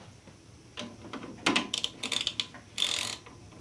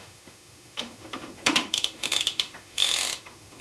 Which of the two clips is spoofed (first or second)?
second